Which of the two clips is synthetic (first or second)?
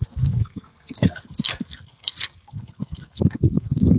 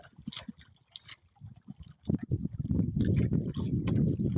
first